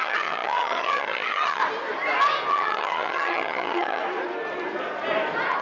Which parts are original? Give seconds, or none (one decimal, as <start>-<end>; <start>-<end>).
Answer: 1.6-2.5; 4.0-5.6